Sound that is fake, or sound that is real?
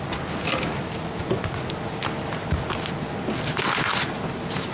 real